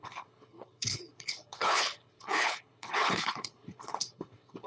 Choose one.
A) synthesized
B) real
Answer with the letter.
A